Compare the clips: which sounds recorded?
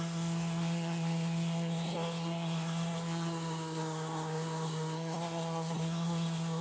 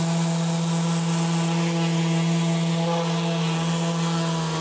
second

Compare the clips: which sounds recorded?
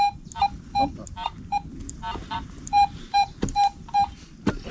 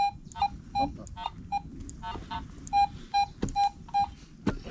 second